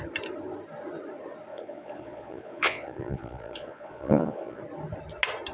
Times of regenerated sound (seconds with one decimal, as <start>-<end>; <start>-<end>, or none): 1.5-4.6